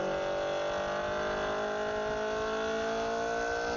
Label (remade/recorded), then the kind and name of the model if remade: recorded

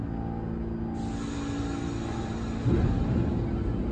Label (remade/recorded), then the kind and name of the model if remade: recorded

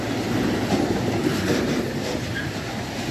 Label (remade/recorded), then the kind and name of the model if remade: recorded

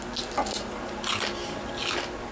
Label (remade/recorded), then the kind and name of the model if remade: recorded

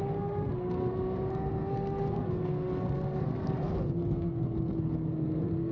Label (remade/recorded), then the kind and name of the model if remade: remade, codec, SNAC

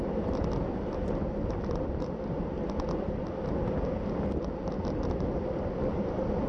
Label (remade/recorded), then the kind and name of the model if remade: recorded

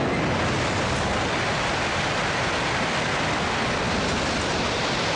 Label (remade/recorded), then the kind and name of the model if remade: recorded